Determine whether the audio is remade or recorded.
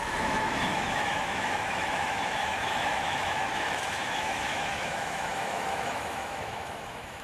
remade